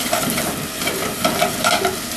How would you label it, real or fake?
real